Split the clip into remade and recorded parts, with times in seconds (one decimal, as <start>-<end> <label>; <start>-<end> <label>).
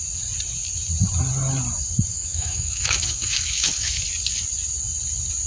0.0-2.1 recorded; 2.1-4.0 remade; 4.0-5.5 recorded